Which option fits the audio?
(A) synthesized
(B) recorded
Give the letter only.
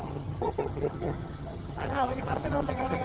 A